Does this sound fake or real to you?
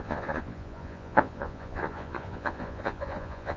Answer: fake